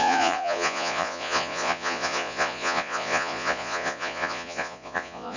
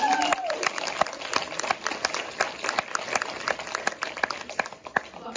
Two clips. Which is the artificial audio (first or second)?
first